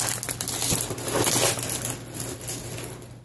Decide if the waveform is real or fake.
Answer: real